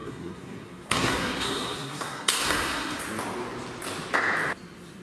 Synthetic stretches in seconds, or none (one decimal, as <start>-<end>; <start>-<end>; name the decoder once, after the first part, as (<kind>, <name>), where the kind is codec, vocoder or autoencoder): 0.0-3.0 (codec, SNAC)